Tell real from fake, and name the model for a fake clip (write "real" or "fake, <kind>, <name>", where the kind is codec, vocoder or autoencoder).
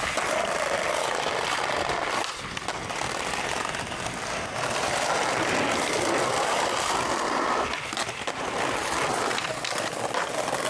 real